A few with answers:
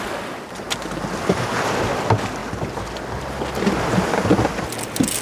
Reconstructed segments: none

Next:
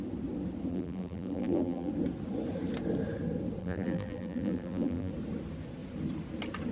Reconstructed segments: 0.7-1.9 (vocoder, BigVGAN v2); 3.6-5.1